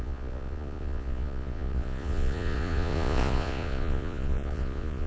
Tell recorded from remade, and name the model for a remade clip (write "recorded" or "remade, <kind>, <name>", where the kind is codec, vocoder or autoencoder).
remade, vocoder, Vocos